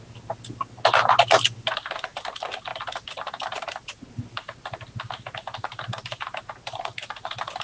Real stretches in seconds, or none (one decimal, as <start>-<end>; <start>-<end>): 0.0-7.6